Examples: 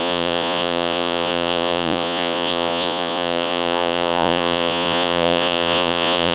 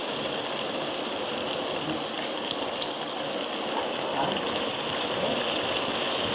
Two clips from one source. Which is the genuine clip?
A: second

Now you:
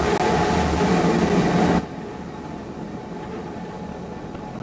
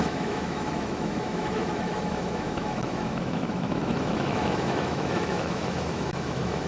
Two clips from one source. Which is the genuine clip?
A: first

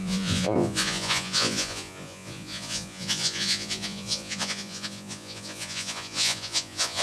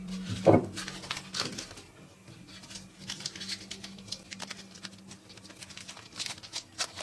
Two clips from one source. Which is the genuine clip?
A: second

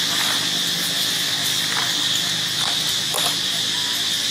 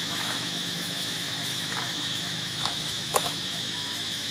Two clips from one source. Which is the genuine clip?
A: first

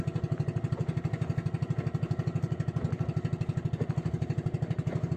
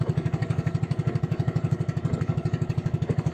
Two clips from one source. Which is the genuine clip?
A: first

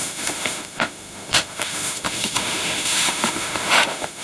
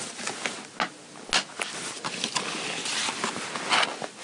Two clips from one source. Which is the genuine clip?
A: second